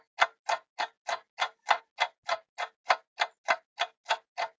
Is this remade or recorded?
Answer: recorded